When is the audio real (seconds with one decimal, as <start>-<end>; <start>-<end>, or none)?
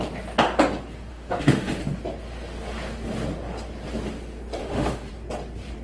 0.0-1.1; 1.8-4.6; 5.1-5.8